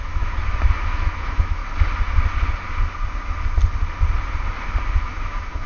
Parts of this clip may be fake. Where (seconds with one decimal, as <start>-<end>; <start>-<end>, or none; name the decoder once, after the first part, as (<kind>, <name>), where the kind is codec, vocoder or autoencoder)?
0.0-1.6 (autoencoder, DAC-VAE); 5.0-5.7